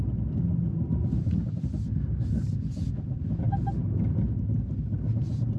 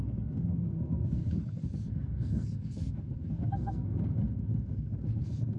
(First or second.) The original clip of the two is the first